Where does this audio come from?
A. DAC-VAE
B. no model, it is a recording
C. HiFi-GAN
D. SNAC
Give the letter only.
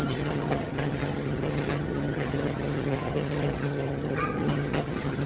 C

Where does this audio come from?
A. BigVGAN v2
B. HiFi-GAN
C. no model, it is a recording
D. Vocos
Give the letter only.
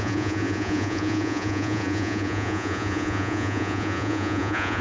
D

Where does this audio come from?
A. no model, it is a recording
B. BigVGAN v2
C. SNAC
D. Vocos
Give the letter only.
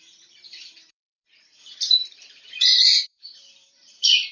B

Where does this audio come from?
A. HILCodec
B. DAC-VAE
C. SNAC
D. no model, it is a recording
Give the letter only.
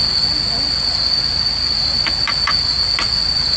D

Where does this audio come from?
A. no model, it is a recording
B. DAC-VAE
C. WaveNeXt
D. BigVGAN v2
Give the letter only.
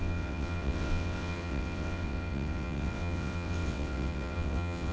C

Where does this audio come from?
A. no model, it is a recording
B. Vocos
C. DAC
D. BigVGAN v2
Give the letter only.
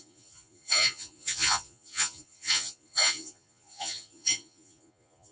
B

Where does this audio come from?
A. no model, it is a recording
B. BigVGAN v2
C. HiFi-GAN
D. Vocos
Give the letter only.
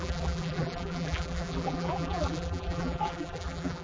B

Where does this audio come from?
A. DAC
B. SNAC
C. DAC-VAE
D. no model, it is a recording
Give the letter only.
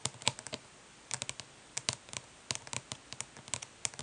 D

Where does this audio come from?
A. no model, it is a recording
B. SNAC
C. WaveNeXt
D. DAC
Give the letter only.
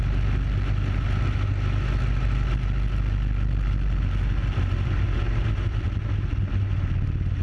A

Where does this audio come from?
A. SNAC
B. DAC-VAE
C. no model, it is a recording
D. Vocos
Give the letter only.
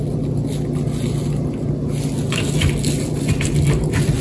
C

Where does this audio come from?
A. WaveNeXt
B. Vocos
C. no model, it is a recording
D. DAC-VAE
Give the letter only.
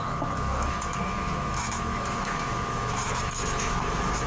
D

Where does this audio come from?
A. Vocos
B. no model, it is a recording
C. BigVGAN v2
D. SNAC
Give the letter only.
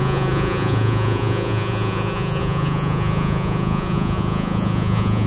A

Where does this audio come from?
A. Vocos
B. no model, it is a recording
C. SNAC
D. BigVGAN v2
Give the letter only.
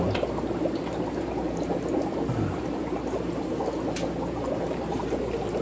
B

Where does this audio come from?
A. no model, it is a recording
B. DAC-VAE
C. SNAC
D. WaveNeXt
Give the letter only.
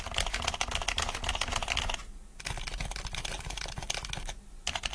A